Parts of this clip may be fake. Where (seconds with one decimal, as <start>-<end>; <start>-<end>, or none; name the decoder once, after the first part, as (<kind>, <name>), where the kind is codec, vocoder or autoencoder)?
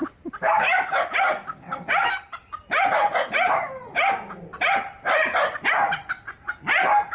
none